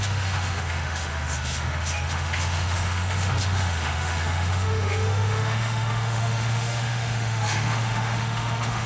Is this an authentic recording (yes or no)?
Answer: no